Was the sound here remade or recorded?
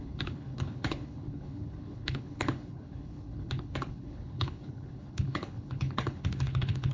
remade